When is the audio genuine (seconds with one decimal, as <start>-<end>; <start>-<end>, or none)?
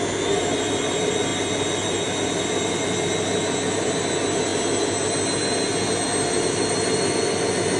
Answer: 0.0-7.8